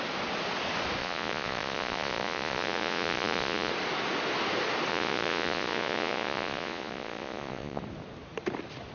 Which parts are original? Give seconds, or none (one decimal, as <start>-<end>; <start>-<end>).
0.0-1.0; 3.7-4.9; 7.8-8.9